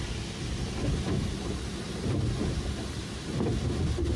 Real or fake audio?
fake